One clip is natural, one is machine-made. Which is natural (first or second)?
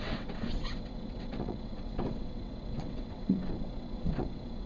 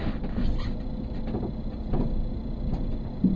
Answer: second